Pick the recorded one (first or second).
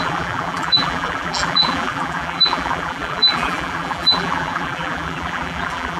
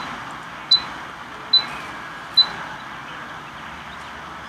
second